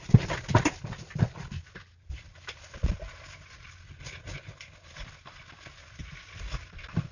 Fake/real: real